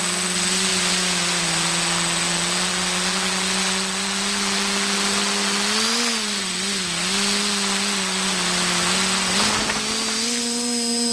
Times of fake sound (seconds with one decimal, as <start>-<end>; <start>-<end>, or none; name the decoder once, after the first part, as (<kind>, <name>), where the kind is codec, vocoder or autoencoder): none